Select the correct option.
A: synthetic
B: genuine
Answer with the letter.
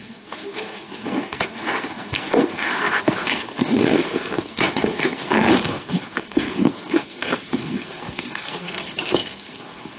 A